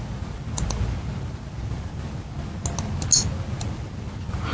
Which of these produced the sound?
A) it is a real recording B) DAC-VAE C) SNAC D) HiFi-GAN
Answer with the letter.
A